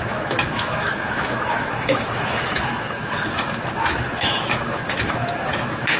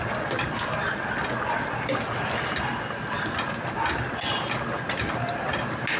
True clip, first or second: second